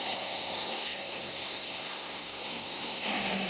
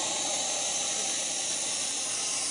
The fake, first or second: first